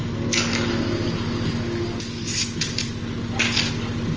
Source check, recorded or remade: recorded